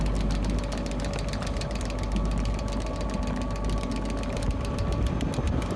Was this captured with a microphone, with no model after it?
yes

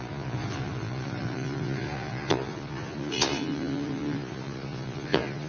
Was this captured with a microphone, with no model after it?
no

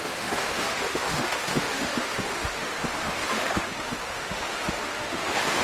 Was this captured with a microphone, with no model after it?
no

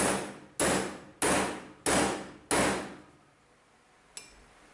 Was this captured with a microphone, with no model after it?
yes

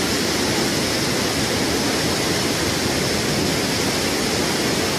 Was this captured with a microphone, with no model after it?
yes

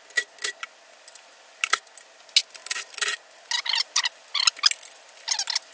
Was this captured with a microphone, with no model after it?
yes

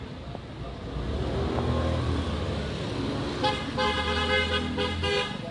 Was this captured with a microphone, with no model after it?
yes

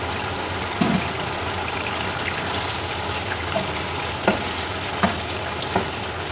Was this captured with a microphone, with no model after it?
yes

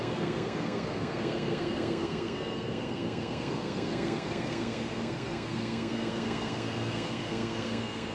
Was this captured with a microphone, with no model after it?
no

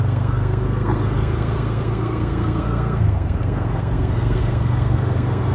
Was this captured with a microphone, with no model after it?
no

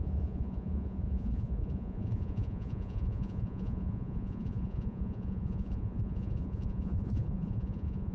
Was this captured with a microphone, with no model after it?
no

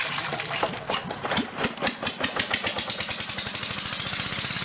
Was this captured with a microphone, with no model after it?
yes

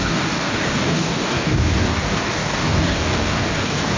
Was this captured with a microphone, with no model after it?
no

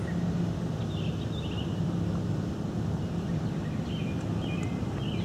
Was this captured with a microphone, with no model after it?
yes